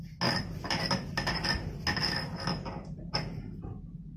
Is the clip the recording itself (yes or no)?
yes